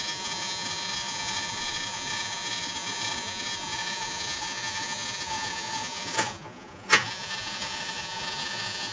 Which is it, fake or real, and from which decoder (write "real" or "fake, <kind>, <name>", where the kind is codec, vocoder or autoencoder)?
fake, vocoder, Vocos